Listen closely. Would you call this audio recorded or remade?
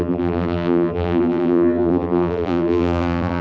remade